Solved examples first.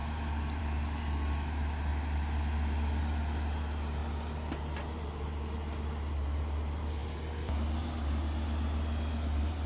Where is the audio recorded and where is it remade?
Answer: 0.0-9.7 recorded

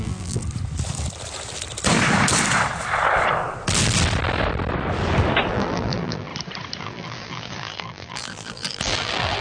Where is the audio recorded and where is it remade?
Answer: 0.0-0.4 remade; 0.4-5.5 recorded; 5.5-6.3 remade; 6.3-6.8 recorded; 6.8-9.4 remade

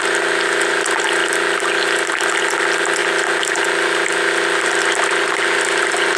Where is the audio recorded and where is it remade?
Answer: 0.0-6.2 recorded

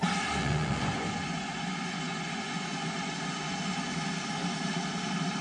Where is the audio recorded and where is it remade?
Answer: 0.0-0.4 recorded; 0.4-3.6 remade; 3.6-5.4 recorded

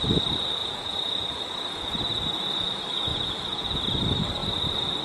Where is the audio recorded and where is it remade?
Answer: 0.0-0.6 recorded; 0.6-1.3 remade; 1.3-3.1 recorded; 3.1-3.8 remade; 3.8-5.0 recorded

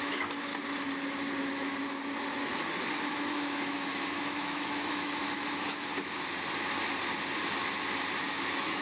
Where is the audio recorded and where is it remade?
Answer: 0.0-0.5 remade; 0.5-1.4 recorded; 1.4-2.0 remade; 2.0-3.1 recorded; 3.1-5.9 remade; 5.9-8.2 recorded; 8.2-8.8 remade

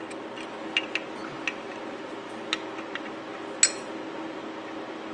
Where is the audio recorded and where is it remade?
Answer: 0.0-5.1 recorded

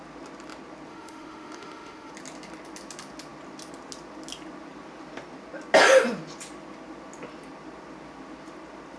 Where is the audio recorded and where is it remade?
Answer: 0.0-0.9 recorded; 0.9-2.1 remade; 2.1-9.0 recorded